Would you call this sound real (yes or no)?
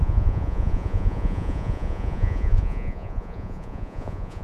no